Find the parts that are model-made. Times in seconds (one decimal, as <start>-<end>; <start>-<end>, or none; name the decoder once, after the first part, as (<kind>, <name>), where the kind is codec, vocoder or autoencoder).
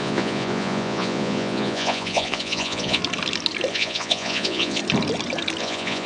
0.0-3.0 (vocoder, Vocos); 3.7-4.8; 5.6-6.1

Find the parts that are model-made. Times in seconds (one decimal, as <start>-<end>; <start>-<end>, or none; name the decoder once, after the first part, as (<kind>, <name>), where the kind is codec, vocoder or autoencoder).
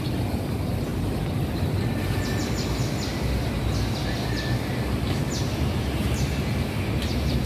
none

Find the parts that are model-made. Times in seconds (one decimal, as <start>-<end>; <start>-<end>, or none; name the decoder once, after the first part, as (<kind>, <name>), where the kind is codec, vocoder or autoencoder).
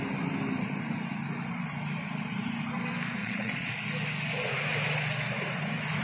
3.2-3.7 (vocoder, Vocos)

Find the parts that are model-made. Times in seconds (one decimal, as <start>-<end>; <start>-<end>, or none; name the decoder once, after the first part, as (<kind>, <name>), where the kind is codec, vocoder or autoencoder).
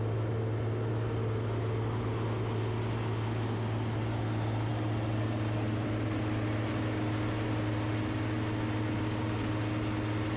4.7-6.1 (vocoder, BigVGAN v2)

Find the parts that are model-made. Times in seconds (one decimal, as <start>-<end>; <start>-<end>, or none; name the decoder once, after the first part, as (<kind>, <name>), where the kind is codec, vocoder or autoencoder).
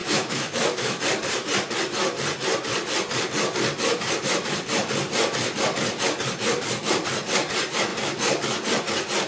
0.0-1.0 (autoencoder, DAC-VAE)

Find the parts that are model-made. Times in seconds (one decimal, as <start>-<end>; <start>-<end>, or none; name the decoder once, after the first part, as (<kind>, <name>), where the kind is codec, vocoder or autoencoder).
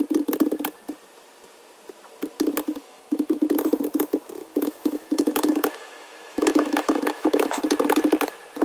2.8-3.4 (autoencoder, DAC-VAE); 4.4-7.6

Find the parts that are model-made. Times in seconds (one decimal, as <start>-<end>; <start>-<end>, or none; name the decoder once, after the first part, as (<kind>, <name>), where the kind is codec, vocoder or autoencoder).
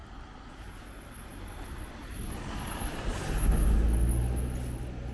none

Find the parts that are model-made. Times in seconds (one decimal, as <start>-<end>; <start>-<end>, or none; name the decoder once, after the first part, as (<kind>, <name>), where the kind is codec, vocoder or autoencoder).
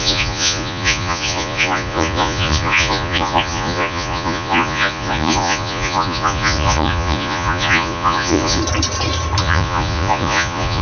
0.0-8.6 (vocoder, Vocos); 9.4-10.8